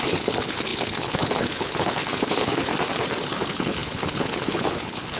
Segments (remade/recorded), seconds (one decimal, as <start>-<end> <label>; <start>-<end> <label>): 0.0-2.7 remade; 2.7-3.3 recorded; 3.3-5.2 remade